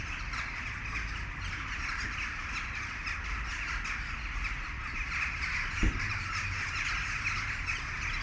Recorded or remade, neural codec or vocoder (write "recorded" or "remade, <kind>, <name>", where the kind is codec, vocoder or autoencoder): recorded